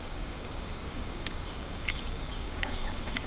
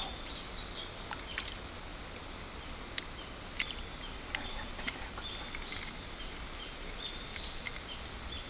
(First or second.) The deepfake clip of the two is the first